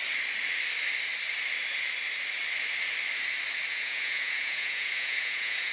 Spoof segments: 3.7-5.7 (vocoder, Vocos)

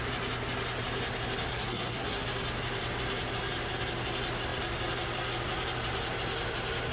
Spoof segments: 1.5-2.2 (codec, SNAC)

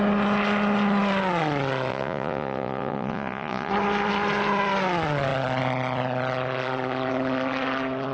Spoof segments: 1.9-3.7 (vocoder, Vocos)